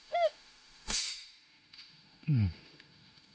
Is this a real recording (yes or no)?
no